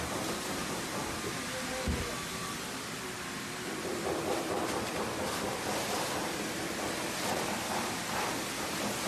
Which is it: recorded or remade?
recorded